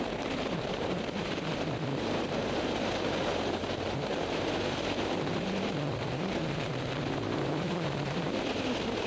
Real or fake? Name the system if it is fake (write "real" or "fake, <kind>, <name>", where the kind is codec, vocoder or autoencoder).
fake, vocoder, BigVGAN v2